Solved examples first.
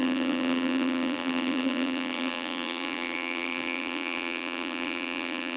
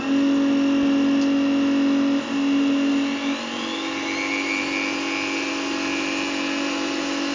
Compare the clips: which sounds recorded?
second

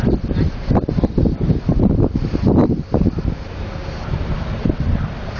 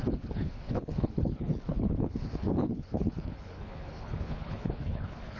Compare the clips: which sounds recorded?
first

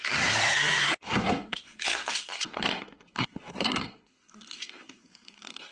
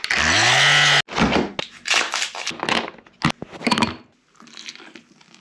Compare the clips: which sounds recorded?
second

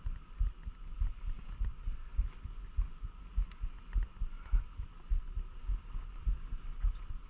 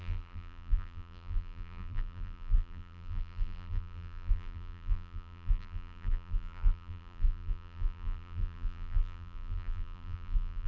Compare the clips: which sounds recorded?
first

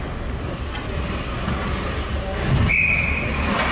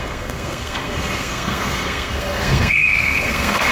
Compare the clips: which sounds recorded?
first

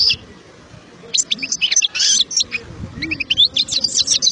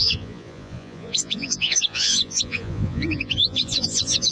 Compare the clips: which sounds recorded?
first